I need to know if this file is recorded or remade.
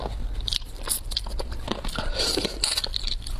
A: recorded